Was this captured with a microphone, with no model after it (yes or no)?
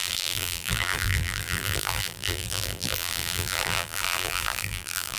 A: no